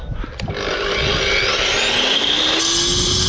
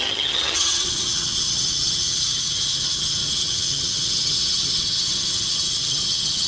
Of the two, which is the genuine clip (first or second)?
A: first